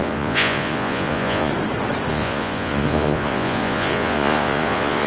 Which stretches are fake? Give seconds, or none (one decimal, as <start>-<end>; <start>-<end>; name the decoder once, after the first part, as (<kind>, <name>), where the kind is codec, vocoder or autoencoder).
0.0-1.5 (vocoder, Vocos); 2.1-5.1